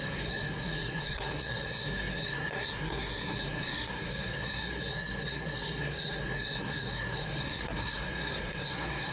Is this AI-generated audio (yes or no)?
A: yes